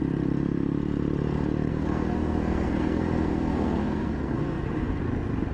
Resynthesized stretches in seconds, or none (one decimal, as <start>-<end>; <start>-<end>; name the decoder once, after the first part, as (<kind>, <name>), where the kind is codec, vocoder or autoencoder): 1.7-5.0 (codec, SNAC)